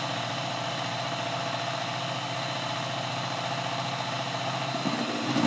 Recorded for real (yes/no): yes